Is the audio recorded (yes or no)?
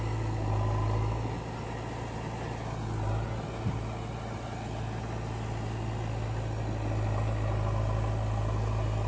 yes